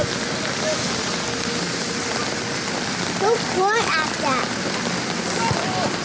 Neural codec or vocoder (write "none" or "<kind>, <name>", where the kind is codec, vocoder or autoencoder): none